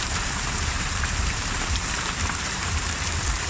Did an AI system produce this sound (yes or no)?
yes